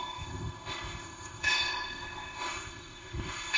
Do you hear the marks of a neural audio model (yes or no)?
yes